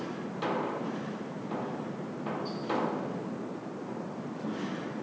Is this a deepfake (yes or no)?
no